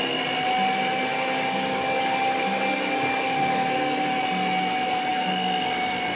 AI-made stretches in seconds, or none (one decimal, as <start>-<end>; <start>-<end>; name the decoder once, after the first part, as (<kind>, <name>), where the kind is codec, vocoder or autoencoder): 1.1-4.2 (codec, DAC); 5.1-6.2